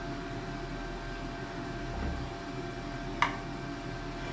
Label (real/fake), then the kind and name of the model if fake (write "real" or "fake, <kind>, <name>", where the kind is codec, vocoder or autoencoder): real